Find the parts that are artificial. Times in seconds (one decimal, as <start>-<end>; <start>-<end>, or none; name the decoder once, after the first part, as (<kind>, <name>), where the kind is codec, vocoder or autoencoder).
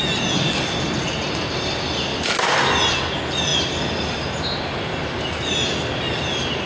none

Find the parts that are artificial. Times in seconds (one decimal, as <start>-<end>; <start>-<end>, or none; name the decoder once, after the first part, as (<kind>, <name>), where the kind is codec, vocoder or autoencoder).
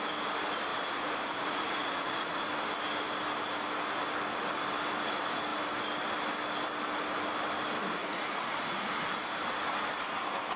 0.7-2.5 (vocoder, Vocos); 8.0-8.9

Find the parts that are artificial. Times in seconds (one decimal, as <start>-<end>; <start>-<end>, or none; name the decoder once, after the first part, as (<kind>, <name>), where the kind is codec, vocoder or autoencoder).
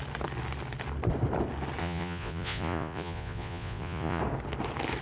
1.8-4.2 (vocoder, Vocos)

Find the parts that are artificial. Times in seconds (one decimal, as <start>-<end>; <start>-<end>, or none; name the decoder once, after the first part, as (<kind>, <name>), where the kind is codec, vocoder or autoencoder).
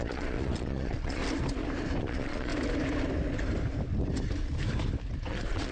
0.0-1.2 (vocoder, Vocos); 2.0-2.5; 5.3-5.7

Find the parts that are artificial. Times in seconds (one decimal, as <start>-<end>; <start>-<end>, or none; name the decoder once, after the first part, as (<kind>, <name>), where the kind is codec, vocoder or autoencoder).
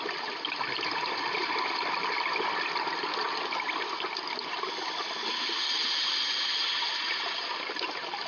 none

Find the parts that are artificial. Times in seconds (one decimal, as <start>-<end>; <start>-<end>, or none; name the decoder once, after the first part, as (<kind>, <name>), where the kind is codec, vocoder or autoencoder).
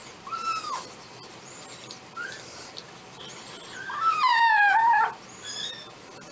none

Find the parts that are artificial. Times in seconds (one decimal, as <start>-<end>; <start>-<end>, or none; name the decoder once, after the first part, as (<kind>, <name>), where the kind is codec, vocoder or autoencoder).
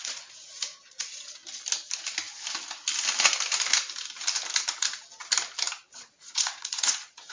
0.0-1.4 (vocoder, Vocos); 5.8-7.3